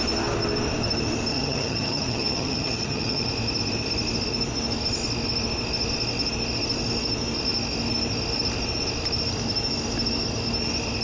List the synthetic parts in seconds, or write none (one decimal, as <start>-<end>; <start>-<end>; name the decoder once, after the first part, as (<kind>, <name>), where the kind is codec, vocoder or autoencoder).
1.3-3.3 (vocoder, HiFi-GAN)